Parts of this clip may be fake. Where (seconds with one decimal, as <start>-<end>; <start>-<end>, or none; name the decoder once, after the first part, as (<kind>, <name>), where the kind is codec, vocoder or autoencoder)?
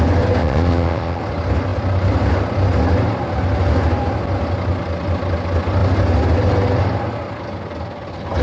0.4-1.2 (vocoder, Vocos)